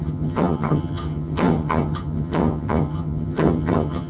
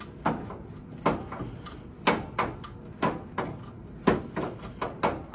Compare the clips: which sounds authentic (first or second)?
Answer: second